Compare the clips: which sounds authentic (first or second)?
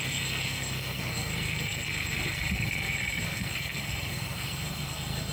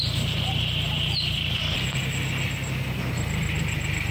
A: second